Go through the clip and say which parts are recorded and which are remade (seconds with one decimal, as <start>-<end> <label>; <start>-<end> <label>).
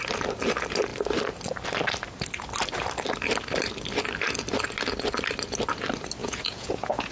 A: 0.0-6.2 recorded; 6.2-7.1 remade